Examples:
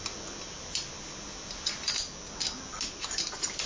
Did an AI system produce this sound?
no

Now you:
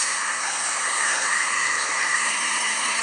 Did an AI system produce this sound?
yes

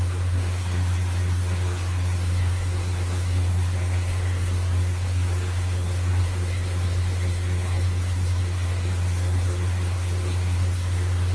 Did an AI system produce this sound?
yes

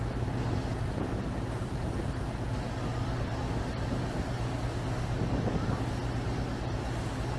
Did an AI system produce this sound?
no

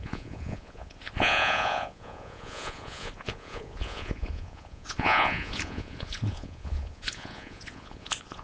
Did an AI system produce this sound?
yes